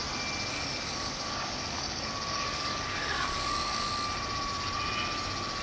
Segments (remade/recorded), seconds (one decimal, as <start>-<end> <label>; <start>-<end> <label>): 0.0-0.5 recorded; 0.5-3.9 remade; 3.9-5.6 recorded